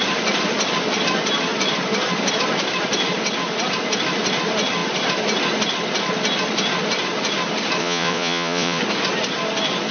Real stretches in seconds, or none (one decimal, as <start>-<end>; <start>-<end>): 0.0-7.8; 8.8-9.9